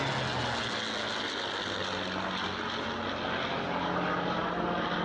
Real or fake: real